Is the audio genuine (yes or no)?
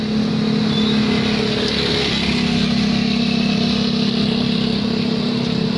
yes